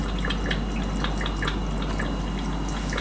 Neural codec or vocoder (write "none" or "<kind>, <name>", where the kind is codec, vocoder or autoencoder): none